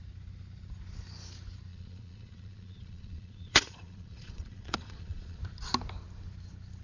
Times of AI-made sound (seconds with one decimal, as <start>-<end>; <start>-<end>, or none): 1.7-5.4